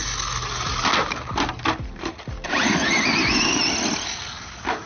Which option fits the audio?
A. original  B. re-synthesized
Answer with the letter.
A